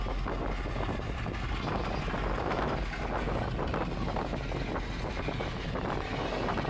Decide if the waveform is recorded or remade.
recorded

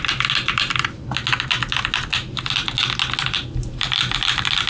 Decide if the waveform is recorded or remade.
recorded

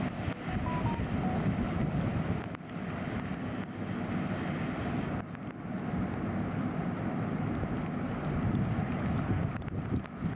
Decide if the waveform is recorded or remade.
recorded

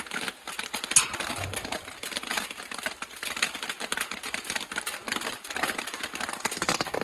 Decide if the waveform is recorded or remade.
recorded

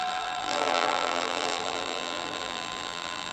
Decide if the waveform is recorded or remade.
remade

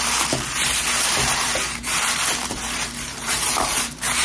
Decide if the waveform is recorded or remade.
remade